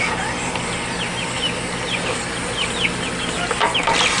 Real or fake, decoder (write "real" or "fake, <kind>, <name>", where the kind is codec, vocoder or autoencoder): real